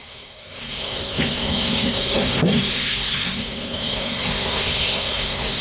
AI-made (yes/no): yes